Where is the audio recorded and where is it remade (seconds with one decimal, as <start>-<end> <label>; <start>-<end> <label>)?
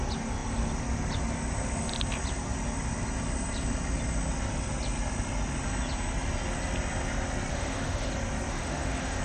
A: 0.0-7.5 recorded; 7.5-8.1 remade; 8.1-8.5 recorded; 8.5-9.2 remade